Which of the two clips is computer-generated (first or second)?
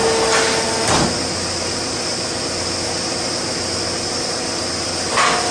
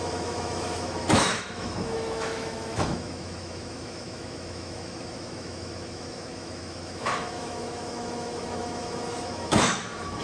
second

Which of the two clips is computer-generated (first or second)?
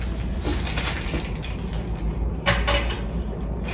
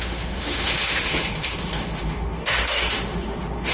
second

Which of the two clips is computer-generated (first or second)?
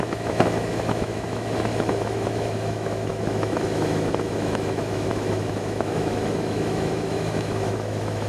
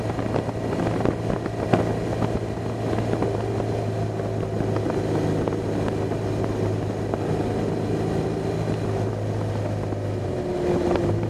first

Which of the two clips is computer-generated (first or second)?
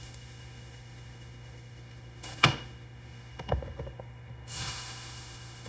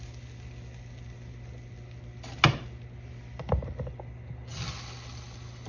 first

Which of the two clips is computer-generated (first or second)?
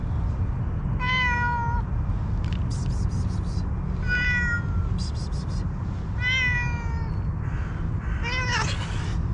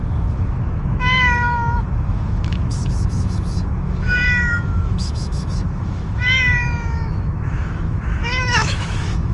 second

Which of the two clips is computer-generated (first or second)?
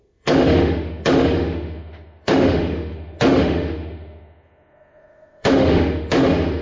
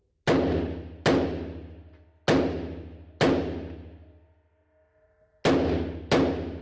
first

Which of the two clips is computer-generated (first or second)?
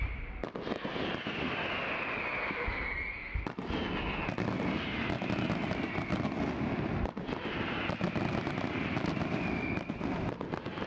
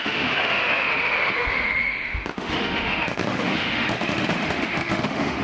second